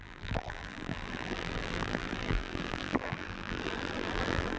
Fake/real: fake